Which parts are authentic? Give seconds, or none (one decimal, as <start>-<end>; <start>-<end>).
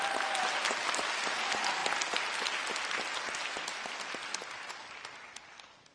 0.0-5.9